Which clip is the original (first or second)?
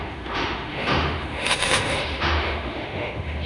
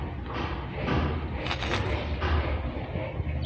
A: second